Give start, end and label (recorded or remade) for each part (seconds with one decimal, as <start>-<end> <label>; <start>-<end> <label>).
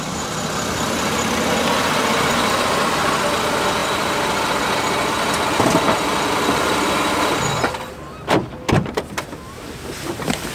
0.0-10.5 recorded